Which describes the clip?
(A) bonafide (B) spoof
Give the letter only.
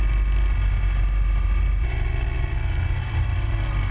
A